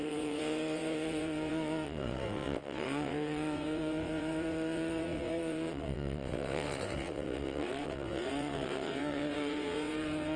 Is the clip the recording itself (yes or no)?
no